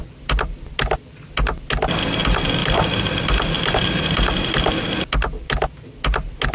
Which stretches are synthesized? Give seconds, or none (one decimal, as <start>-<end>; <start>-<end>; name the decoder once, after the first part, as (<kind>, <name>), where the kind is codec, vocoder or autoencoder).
none